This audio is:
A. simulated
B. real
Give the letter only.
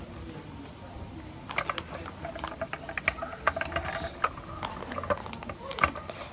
B